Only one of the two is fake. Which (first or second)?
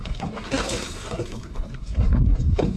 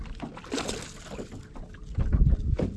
first